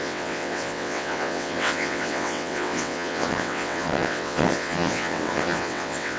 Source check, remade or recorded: remade